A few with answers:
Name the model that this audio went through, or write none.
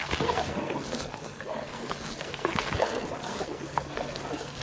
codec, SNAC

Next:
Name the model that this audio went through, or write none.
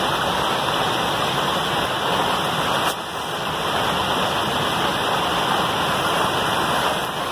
none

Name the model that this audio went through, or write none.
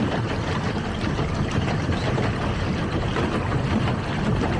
none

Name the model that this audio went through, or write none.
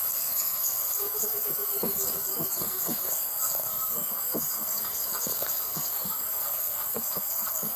codec, SNAC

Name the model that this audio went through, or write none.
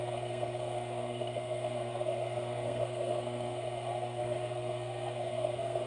codec, SNAC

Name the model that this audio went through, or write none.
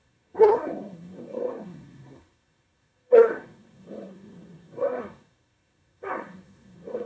codec, SNAC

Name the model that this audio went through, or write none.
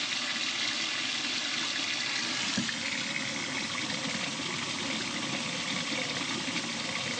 none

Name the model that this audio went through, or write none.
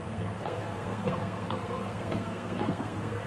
codec, SNAC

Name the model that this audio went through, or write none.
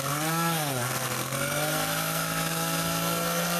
codec, SNAC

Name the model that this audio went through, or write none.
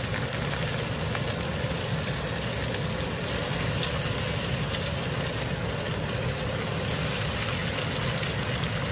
none